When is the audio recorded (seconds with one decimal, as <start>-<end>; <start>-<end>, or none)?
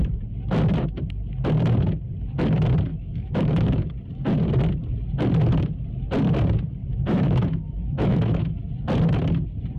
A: 0.0-2.9; 3.9-6.8; 8.6-9.8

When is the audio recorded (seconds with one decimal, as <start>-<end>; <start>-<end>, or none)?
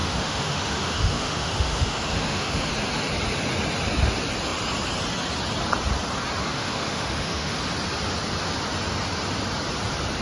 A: 2.7-6.4; 7.6-10.2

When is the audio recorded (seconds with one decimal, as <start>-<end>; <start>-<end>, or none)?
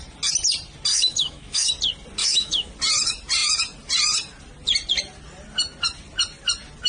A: 0.0-0.9; 1.7-2.2; 2.7-6.9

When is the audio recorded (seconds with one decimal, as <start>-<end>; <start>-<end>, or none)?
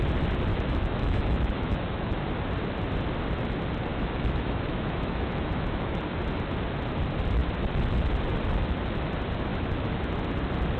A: 0.0-0.5; 2.2-3.9; 6.0-9.5; 10.1-10.8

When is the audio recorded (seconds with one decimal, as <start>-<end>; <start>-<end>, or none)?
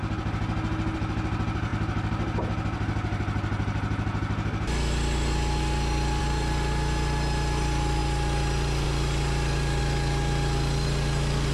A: 0.0-11.5